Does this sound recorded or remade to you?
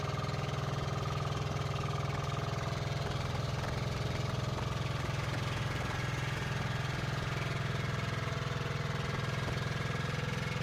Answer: recorded